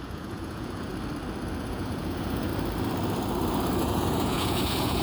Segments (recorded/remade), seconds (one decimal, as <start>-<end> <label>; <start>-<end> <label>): 0.0-0.9 remade; 0.9-1.6 recorded; 1.6-2.5 remade; 2.5-3.8 recorded; 3.8-5.0 remade